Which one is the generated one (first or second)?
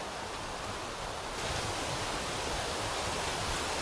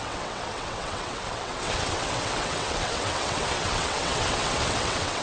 second